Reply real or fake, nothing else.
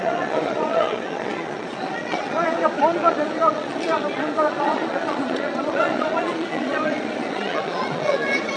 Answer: fake